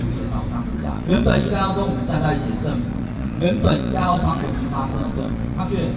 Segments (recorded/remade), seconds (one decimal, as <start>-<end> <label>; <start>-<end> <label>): 0.0-0.7 recorded; 0.7-1.5 remade; 1.5-2.9 recorded; 2.9-4.5 remade; 4.5-4.9 recorded; 4.9-5.6 remade; 5.6-6.0 recorded